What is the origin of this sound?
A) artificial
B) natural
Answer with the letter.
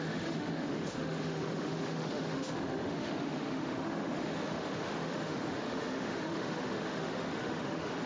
A